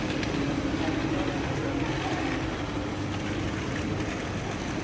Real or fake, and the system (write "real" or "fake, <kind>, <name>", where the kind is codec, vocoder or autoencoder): real